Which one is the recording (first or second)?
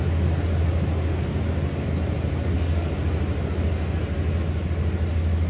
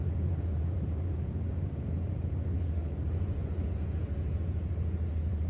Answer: first